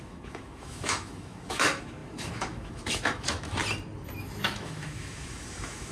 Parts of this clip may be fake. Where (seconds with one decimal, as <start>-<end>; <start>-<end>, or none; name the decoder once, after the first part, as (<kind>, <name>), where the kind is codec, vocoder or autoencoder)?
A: 0.0-3.6 (autoencoder, DAC-VAE); 4.2-5.9